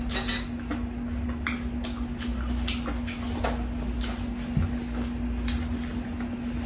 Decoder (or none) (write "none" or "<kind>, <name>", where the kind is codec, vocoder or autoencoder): none